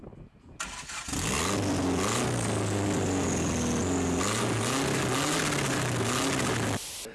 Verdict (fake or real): real